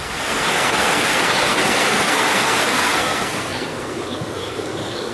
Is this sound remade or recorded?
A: remade